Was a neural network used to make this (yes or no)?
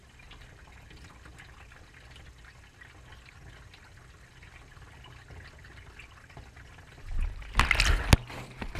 no